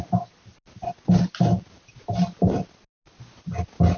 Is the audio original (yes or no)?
yes